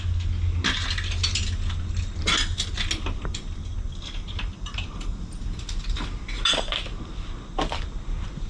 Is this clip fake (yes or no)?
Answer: no